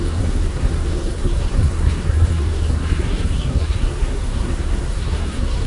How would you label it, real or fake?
fake